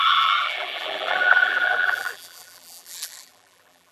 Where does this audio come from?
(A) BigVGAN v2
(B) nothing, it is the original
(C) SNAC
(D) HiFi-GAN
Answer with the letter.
A